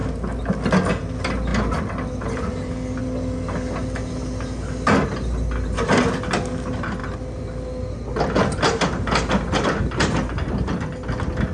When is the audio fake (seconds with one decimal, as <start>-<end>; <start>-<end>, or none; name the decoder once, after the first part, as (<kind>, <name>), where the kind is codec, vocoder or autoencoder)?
none